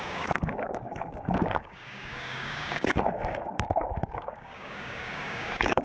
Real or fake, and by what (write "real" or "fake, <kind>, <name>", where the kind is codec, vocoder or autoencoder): fake, codec, DAC